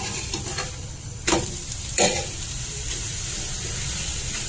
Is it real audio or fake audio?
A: fake